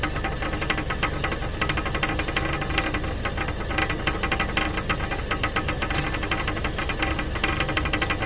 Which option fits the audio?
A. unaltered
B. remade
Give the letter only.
A